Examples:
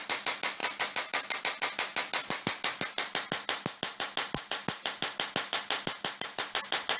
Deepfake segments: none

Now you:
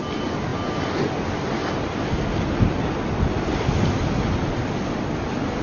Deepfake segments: none

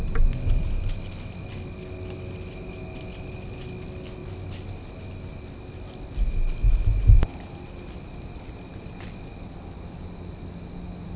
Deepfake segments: none